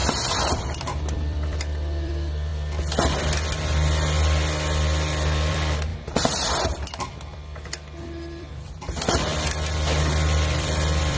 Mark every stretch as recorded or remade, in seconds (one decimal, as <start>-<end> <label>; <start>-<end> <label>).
0.0-2.5 remade; 2.5-5.5 recorded; 5.5-9.3 remade; 9.3-10.0 recorded; 10.0-11.2 remade